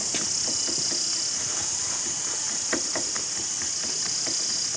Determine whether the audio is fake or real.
real